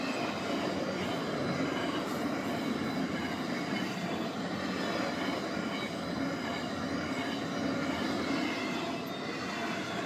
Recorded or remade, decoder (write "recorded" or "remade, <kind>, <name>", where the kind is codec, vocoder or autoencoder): recorded